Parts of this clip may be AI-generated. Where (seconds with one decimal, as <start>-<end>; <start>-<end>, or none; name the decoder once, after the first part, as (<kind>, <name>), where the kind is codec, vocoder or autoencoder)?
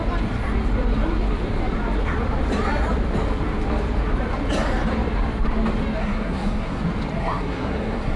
6.0-6.8 (codec, SNAC); 7.2-8.2